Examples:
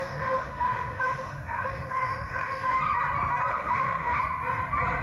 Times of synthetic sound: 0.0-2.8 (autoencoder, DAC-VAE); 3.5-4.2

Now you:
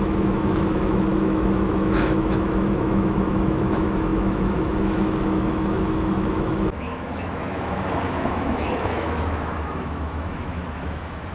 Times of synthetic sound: 0.0-11.3 (autoencoder, DAC-VAE)

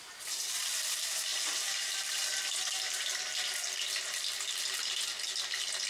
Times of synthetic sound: none

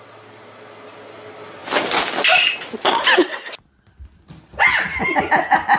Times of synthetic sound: none